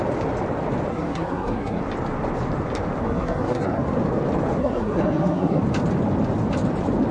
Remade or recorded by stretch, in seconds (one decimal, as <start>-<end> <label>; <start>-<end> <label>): 0.0-0.9 recorded; 0.9-1.8 remade; 1.8-3.0 recorded; 3.0-3.9 remade; 3.9-4.6 recorded; 4.6-5.6 remade; 5.6-7.1 recorded